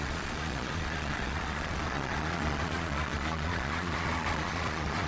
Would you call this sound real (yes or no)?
no